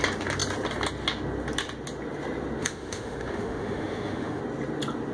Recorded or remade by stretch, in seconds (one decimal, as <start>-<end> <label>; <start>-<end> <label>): 0.0-2.6 recorded; 2.6-4.4 remade; 4.4-5.1 recorded